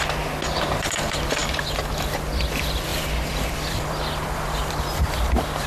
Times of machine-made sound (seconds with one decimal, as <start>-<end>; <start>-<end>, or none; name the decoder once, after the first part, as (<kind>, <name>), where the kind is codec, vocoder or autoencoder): 2.9-5.7 (vocoder, BigVGAN v2)